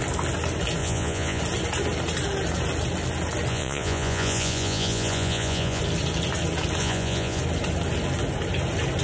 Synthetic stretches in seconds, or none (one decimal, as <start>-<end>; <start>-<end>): 0.8-1.4; 3.5-5.8; 6.8-7.4